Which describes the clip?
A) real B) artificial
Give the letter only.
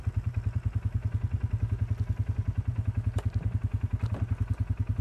A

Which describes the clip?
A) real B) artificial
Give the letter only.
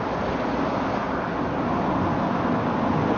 A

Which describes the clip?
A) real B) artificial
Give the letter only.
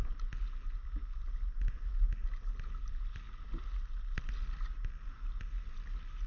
A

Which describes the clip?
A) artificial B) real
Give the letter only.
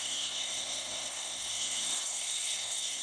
A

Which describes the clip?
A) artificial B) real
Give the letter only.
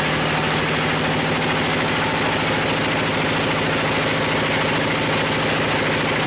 B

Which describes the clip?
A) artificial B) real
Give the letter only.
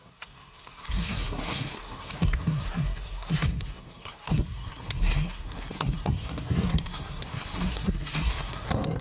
A